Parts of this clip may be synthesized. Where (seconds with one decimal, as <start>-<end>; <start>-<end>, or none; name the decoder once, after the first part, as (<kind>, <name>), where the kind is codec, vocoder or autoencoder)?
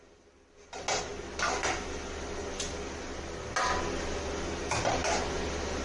none